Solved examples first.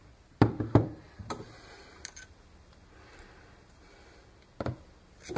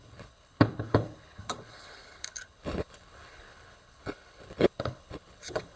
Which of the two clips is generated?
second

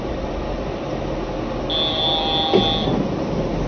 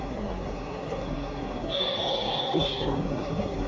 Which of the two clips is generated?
second